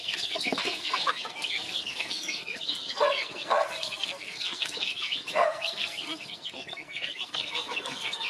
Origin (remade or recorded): remade